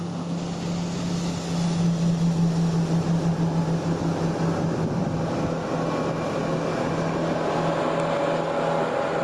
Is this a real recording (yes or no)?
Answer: yes